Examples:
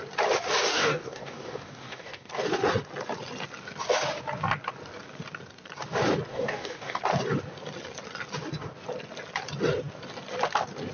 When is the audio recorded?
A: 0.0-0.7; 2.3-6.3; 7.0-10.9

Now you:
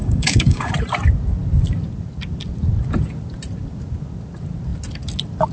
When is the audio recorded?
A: 0.7-5.5

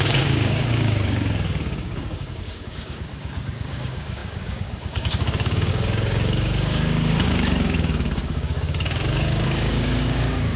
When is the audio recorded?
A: none